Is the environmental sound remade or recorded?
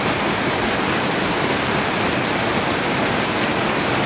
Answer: recorded